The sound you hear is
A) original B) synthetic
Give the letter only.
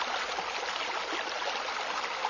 A